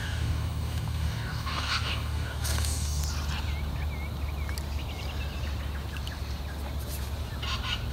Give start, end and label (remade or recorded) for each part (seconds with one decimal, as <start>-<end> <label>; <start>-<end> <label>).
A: 0.0-3.0 remade; 3.0-7.9 recorded